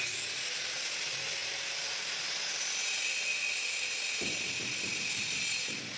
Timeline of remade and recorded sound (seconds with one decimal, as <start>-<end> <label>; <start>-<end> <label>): 0.0-6.0 recorded